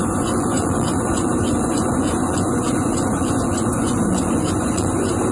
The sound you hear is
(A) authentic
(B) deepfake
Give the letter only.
B